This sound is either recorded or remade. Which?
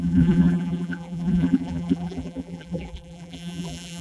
remade